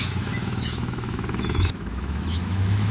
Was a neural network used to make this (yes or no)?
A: yes